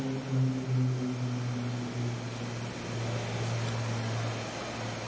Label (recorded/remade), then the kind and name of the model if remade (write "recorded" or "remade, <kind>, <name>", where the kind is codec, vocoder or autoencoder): recorded